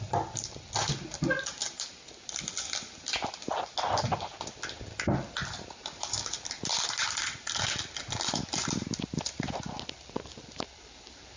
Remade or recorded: recorded